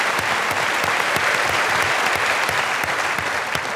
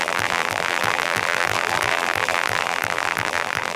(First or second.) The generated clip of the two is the second